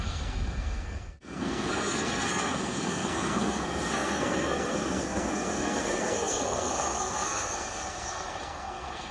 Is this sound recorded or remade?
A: remade